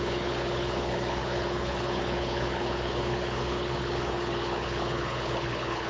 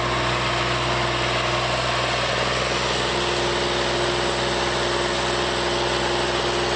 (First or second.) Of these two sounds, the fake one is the first